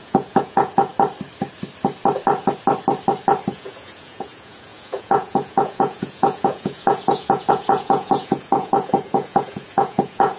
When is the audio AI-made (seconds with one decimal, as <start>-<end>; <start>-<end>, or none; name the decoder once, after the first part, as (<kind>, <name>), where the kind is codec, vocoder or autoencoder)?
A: 0.0-0.9 (vocoder, Vocos); 3.5-10.4